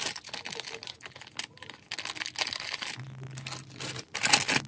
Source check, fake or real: real